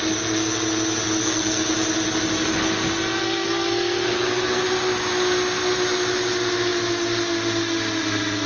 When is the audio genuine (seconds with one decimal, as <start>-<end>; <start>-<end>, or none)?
0.0-1.2; 1.7-3.2; 4.6-8.5